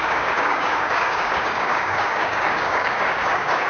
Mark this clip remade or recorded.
remade